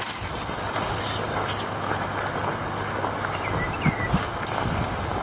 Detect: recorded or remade recorded